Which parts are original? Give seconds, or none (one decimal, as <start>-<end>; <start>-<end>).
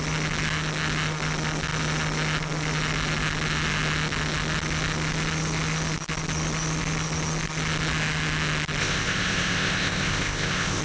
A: 0.0-8.8